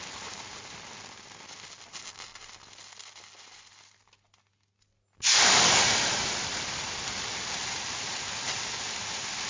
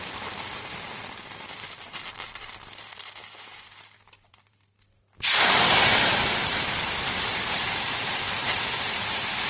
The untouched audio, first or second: first